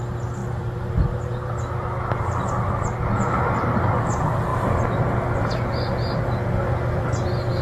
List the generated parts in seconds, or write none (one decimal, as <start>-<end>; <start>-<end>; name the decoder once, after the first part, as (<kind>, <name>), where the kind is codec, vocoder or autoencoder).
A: none